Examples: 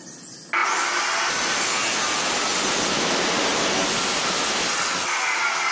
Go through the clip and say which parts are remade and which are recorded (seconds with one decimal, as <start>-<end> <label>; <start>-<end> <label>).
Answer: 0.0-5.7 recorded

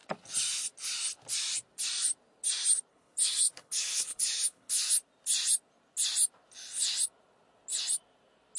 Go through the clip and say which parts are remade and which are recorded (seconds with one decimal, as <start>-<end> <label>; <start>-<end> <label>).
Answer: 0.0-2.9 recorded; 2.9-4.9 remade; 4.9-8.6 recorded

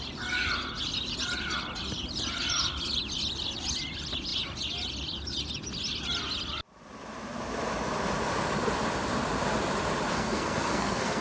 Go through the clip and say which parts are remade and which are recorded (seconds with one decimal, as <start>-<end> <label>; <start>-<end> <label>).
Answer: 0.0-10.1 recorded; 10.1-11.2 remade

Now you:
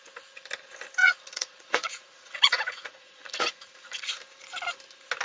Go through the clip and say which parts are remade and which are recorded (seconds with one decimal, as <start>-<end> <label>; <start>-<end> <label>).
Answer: 0.0-1.0 recorded; 1.0-4.1 remade; 4.1-5.2 recorded